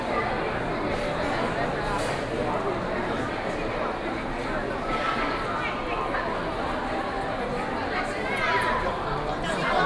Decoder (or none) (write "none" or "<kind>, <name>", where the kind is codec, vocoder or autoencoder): none